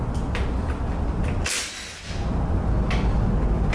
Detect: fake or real real